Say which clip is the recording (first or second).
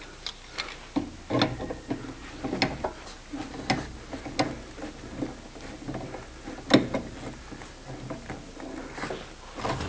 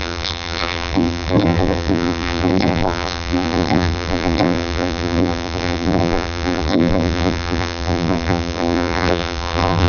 first